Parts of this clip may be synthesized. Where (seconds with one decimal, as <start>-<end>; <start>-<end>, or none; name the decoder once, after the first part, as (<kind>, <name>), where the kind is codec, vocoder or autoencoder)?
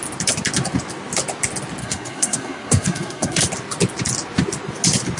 1.8-3.4 (codec, SNAC)